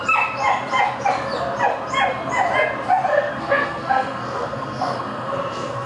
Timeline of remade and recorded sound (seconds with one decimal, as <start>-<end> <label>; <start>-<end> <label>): 0.0-3.1 recorded; 3.1-5.9 remade